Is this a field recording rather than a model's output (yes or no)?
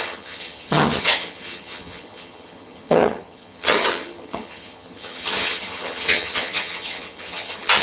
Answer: no